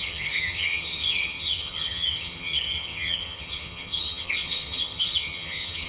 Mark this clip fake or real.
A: fake